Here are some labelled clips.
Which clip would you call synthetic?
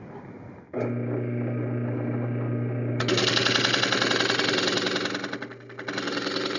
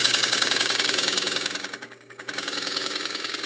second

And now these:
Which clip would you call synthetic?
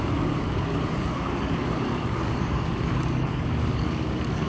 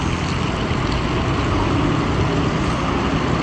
first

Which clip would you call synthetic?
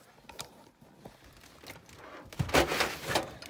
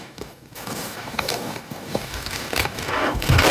second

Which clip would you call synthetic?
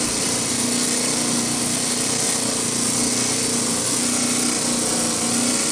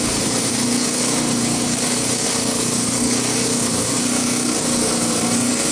second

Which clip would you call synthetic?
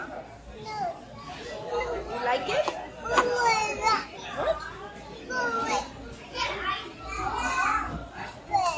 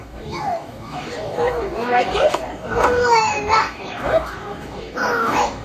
second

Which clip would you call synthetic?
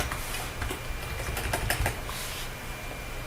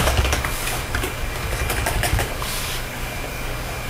second